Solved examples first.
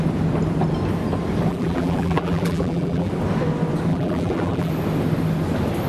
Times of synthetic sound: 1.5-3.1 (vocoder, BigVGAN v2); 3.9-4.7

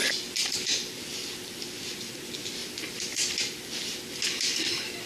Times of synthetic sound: 0.4-2.1 (vocoder, BigVGAN v2); 2.6-4.6

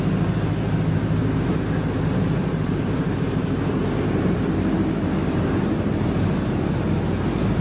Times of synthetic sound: 2.4-4.5 (vocoder, BigVGAN v2); 5.2-6.7

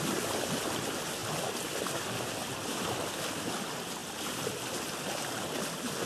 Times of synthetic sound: none

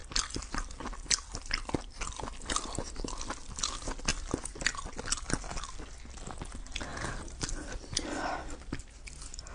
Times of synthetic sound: 0.0-2.5 (vocoder, BigVGAN v2); 6.9-8.8

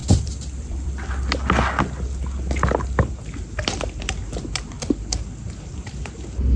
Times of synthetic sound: 0.0-1.1 (vocoder, BigVGAN v2)

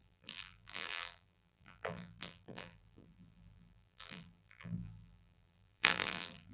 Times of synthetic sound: 0.0-6.5 (vocoder, BigVGAN v2)